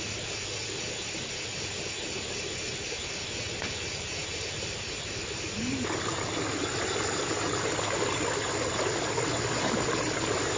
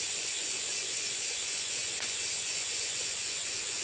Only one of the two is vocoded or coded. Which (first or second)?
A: second